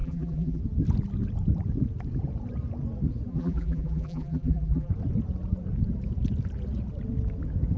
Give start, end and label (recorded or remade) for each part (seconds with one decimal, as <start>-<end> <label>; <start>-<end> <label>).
0.0-0.6 remade; 0.6-3.3 recorded; 3.3-4.9 remade; 4.9-7.8 recorded